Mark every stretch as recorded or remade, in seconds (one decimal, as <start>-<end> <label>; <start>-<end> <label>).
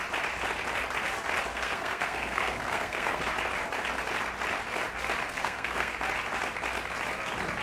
0.0-1.5 recorded; 1.5-3.2 remade; 3.2-5.2 recorded; 5.2-5.9 remade; 5.9-7.6 recorded